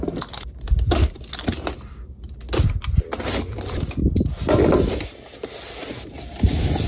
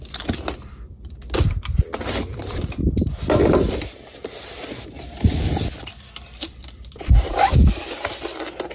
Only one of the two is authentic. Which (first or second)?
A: first